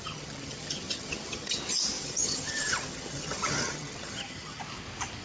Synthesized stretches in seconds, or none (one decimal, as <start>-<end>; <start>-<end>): 0.0-1.6; 2.0-4.6